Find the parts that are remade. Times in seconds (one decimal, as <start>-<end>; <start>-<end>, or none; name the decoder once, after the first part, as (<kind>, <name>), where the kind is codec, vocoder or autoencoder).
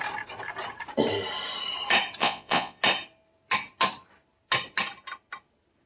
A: 2.2-2.8 (vocoder, Vocos)